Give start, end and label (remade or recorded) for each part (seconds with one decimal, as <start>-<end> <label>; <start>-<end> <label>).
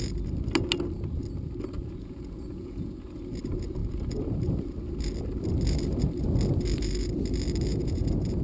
0.0-1.8 recorded; 1.8-3.2 remade; 3.2-7.7 recorded; 7.7-8.4 remade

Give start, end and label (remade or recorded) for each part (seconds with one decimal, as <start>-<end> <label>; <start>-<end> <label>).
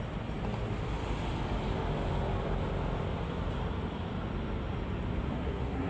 0.0-5.3 recorded; 5.3-5.9 remade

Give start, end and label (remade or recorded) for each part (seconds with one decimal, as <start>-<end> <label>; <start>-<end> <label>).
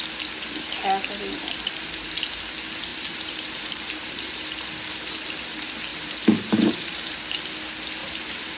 0.0-2.9 recorded; 2.9-4.7 remade; 4.7-5.9 recorded; 5.9-7.4 remade; 7.4-8.0 recorded; 8.0-8.6 remade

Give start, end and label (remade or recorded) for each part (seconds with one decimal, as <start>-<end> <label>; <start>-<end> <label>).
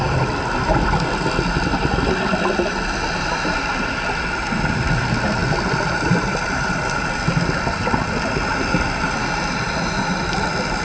0.0-10.8 recorded